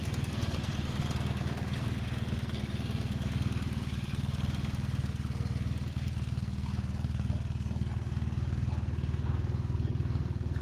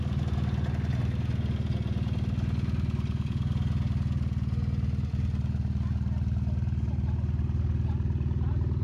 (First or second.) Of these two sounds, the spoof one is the first